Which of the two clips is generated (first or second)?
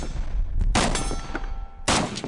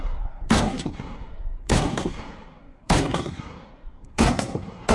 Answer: second